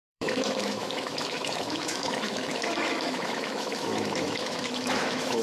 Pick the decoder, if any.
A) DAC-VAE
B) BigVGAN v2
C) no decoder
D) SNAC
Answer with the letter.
A